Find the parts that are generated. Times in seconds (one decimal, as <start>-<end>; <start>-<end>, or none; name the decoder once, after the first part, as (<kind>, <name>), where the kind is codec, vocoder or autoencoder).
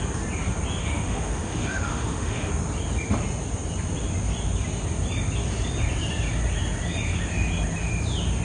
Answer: 0.8-2.5 (autoencoder, DAC-VAE)